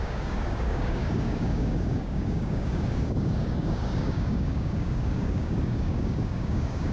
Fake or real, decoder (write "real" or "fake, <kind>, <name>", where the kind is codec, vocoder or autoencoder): fake, codec, DAC